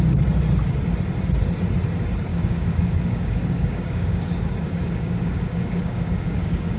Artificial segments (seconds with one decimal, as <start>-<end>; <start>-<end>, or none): 2.3-6.8